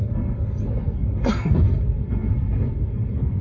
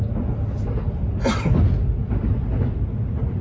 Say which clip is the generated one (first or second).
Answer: first